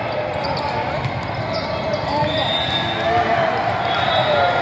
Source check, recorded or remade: recorded